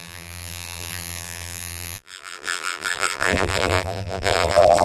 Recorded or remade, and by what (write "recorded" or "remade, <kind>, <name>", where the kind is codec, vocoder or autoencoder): remade, vocoder, BigVGAN v2